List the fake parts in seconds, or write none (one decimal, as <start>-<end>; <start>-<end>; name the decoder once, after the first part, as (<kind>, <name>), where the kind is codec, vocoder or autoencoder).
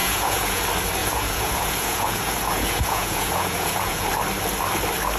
0.0-0.6 (vocoder, Vocos); 1.0-4.1